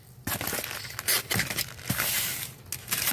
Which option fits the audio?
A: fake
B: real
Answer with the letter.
B